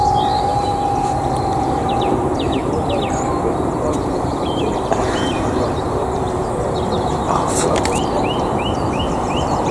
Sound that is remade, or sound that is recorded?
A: remade